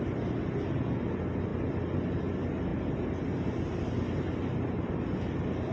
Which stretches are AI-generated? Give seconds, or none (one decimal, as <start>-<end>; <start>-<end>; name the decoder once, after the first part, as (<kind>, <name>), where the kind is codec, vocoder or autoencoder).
none